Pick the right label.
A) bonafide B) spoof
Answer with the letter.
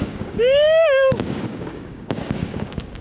B